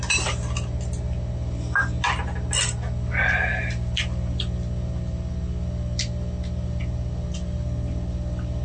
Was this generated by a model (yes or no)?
no